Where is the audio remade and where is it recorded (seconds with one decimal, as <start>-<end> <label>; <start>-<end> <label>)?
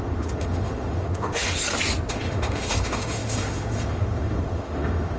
0.0-1.6 remade; 1.6-2.1 recorded; 2.1-5.2 remade